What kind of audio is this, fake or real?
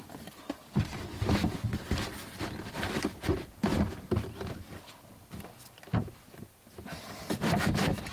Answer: real